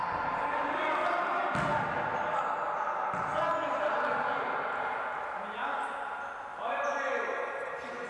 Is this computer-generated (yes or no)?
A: no